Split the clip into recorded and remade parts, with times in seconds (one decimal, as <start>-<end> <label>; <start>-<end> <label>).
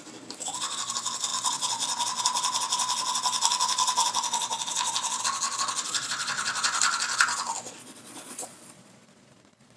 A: 0.0-7.8 recorded; 7.8-9.8 remade